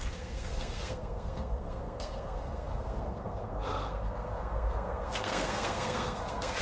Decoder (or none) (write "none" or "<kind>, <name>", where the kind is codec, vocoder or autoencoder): codec, SNAC